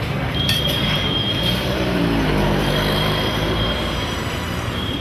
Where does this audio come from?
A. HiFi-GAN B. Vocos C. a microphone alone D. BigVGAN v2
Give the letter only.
D